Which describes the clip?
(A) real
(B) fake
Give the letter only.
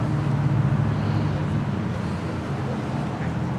A